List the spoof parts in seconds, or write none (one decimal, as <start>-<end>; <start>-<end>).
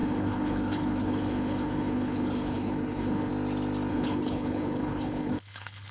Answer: 0.0-3.3; 3.9-5.9